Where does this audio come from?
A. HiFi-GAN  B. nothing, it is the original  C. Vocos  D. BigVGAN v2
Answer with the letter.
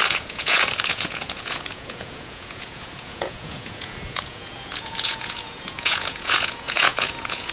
C